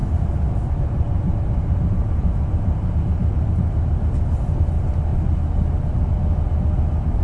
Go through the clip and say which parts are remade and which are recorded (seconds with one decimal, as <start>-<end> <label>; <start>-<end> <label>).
0.0-7.2 recorded